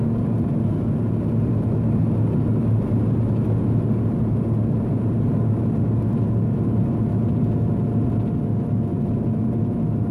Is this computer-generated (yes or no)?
no